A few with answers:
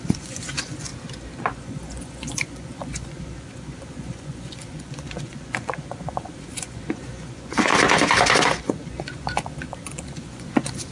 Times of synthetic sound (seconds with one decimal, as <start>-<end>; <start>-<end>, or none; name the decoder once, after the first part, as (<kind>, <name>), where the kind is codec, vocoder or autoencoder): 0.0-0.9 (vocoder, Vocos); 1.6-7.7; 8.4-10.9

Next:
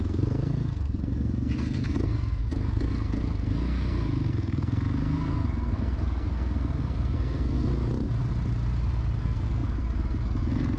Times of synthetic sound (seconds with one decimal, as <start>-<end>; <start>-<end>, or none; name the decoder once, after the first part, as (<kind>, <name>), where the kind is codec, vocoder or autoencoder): 0.0-7.7 (codec, SNAC); 9.2-10.8

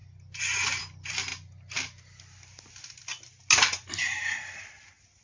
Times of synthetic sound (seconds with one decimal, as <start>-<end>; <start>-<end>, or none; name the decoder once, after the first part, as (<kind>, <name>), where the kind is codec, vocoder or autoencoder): none